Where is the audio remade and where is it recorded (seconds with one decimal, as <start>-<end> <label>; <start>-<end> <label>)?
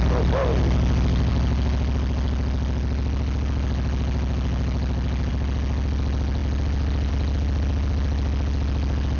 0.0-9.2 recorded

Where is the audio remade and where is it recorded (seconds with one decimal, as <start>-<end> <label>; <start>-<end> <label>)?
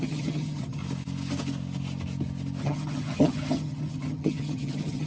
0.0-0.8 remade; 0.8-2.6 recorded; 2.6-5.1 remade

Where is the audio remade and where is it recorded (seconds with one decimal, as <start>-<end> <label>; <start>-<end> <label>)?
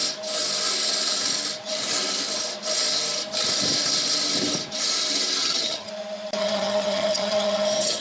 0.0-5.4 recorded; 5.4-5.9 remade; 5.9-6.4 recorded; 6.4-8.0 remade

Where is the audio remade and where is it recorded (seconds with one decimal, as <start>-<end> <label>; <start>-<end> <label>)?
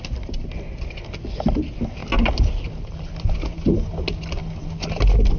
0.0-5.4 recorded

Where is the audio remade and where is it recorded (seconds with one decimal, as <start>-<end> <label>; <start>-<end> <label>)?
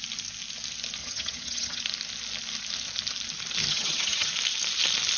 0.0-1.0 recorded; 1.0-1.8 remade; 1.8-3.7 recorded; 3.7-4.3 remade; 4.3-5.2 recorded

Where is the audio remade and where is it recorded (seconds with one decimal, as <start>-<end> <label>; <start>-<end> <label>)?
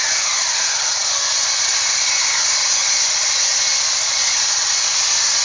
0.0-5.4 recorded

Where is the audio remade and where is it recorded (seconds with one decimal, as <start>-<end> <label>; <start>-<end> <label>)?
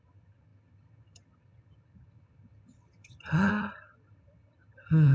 0.0-5.1 remade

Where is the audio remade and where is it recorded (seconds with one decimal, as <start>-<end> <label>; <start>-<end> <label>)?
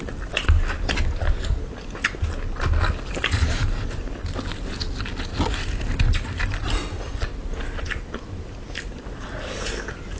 0.0-10.2 recorded